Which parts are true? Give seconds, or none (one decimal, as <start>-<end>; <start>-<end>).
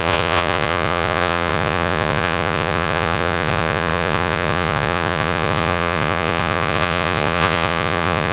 none